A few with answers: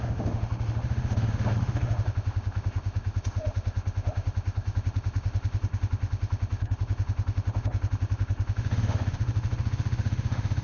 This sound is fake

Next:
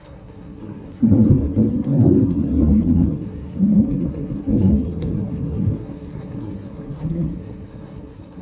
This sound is fake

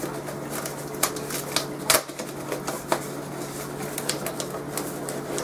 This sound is real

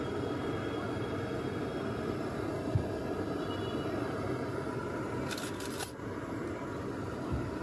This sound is real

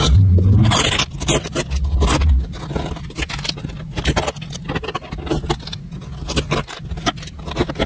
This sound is real